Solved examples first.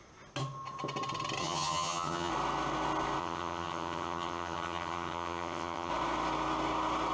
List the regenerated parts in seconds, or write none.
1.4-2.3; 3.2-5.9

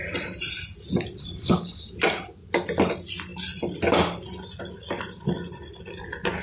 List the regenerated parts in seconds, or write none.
1.2-1.8

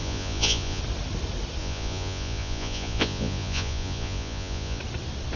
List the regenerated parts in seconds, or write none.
0.0-0.8; 1.6-4.8

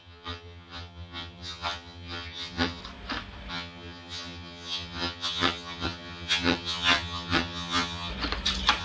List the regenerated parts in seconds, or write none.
0.0-2.8; 3.5-8.1